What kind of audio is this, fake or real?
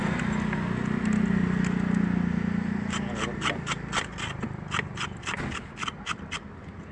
real